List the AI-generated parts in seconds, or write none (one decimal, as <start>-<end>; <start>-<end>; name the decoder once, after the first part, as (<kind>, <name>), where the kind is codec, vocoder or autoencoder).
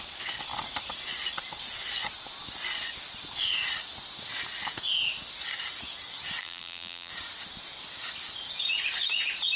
6.4-7.1 (vocoder, BigVGAN v2)